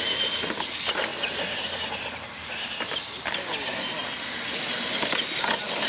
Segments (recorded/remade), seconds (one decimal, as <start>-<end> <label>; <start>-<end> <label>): 0.0-5.9 recorded